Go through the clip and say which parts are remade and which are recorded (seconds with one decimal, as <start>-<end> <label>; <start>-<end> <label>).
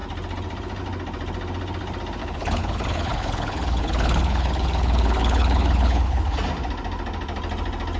0.0-2.2 recorded; 2.2-6.2 remade; 6.2-8.0 recorded